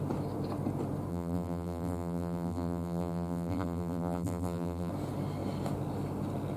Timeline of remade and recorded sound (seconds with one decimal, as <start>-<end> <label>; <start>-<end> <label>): 0.0-1.1 recorded; 1.1-4.9 remade; 4.9-6.6 recorded